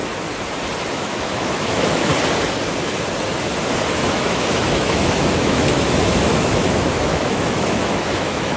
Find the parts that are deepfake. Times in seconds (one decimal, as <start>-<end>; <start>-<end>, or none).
0.9-2.1; 3.9-8.6